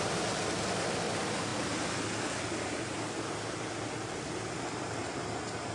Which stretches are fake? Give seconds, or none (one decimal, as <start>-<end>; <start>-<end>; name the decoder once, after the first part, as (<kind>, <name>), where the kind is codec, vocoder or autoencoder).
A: none